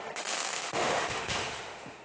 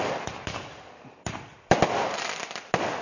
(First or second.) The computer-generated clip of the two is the first